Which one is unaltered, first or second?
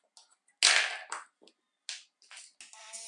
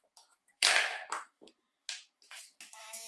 first